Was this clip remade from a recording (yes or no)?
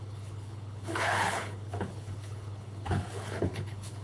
yes